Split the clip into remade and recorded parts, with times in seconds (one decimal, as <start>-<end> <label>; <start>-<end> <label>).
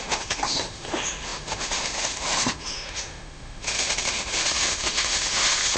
0.0-5.8 remade